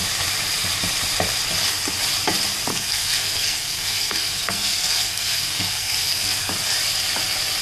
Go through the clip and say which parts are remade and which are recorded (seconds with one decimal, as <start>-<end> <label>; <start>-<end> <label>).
0.0-2.7 recorded; 2.7-6.5 remade; 6.5-7.6 recorded